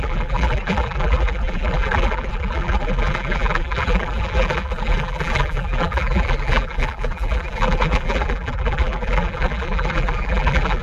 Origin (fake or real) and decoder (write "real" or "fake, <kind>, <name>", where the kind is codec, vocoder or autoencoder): fake, vocoder, BigVGAN v2